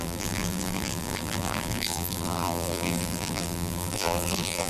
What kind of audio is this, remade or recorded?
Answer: remade